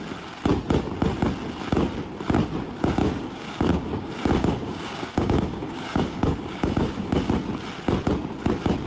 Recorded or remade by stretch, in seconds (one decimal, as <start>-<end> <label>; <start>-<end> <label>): 0.0-3.0 recorded; 3.0-7.3 remade; 7.3-8.9 recorded